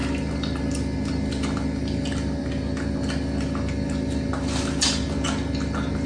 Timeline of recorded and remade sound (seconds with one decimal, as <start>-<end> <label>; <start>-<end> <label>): 0.0-6.1 recorded